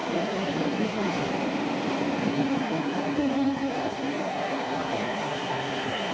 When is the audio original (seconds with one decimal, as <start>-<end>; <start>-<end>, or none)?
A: 1.3-2.2